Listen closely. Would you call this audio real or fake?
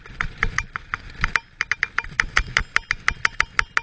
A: real